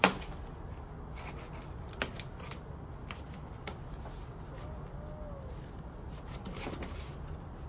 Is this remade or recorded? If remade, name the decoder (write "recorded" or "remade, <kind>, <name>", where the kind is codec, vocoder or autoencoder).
recorded